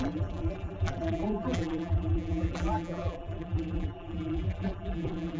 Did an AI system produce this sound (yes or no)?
yes